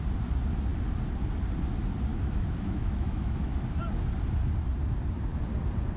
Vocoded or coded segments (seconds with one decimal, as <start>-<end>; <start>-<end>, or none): 2.1-3.6